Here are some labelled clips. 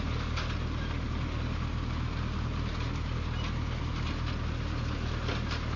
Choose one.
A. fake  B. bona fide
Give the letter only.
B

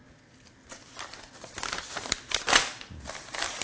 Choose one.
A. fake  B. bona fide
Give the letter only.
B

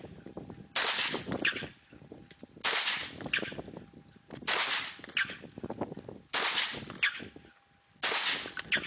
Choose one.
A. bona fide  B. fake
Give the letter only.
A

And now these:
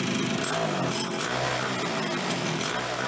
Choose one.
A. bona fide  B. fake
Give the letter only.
A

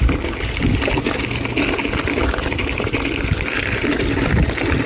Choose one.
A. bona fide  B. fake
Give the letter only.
A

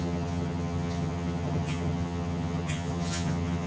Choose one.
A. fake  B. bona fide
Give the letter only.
A